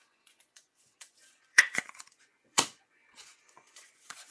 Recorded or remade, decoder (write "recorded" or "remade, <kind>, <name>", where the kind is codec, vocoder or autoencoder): remade, vocoder, Vocos